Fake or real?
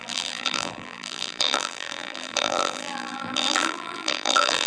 fake